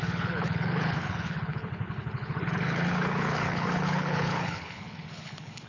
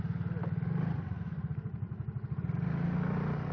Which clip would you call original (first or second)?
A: second